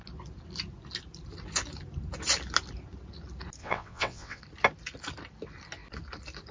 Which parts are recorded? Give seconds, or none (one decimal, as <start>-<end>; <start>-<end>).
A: 0.0-3.6; 4.4-6.5

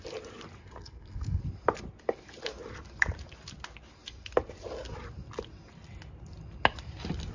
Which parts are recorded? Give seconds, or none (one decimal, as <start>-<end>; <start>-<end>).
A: 0.0-0.6; 1.4-7.3

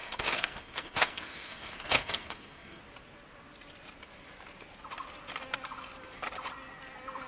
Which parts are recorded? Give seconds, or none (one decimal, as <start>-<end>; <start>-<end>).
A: 2.8-7.3

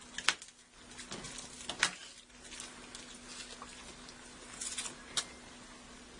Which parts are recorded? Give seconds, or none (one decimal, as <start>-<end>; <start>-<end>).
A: 0.0-6.2

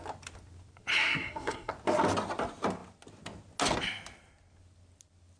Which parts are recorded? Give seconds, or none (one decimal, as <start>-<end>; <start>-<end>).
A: 0.0-0.9; 1.7-5.4